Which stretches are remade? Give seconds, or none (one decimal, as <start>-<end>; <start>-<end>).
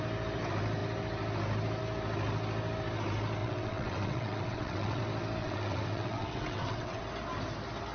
3.4-5.0; 5.4-7.0